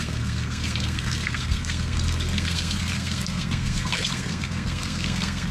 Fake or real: fake